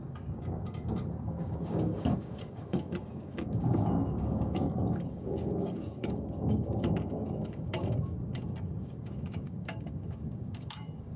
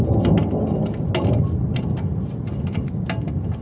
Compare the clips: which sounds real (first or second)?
second